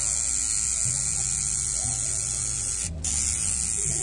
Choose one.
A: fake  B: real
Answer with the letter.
B